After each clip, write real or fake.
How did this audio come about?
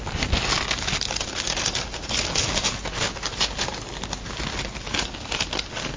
real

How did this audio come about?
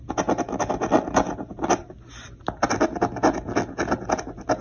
real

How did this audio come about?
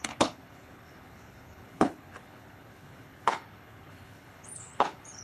fake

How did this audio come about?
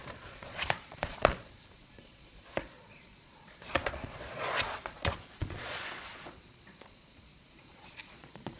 fake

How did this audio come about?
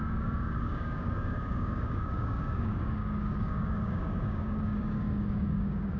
fake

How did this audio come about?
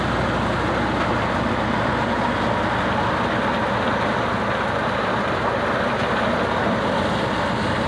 real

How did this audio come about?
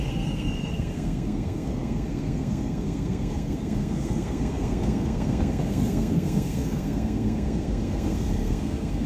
fake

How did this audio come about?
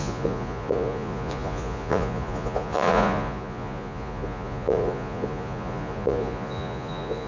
fake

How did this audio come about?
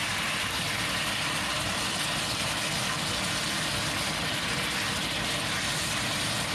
real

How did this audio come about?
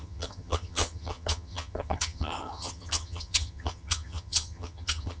fake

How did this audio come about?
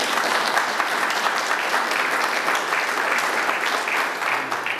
real